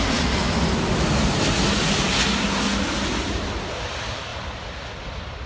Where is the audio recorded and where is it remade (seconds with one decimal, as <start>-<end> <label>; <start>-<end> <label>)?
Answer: 0.0-5.5 recorded